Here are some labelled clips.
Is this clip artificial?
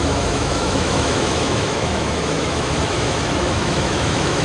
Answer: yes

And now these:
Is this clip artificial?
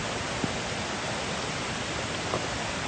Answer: no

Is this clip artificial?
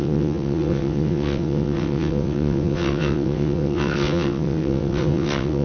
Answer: yes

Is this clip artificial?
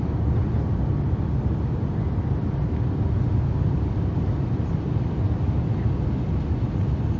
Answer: no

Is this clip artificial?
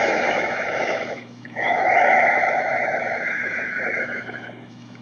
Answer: yes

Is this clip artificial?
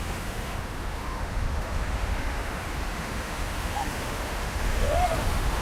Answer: yes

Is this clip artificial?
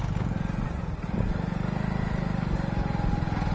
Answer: no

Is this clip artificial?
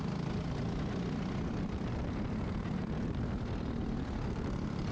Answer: no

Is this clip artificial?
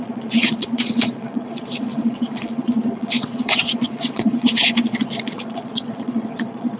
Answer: yes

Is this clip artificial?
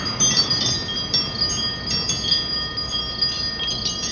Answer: no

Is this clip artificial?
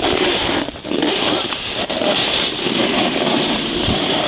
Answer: yes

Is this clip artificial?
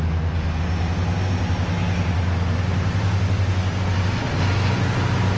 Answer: no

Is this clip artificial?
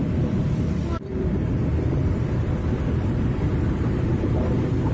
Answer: yes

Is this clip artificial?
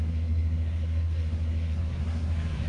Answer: yes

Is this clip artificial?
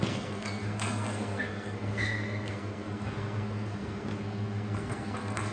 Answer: yes